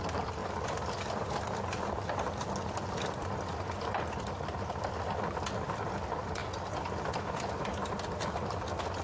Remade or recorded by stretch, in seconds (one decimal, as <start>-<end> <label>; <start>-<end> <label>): 0.0-0.4 recorded; 0.4-4.8 remade; 4.8-6.4 recorded; 6.4-6.9 remade; 6.9-9.0 recorded